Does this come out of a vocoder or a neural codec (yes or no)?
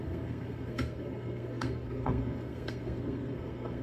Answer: yes